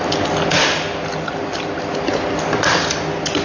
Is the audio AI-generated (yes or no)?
no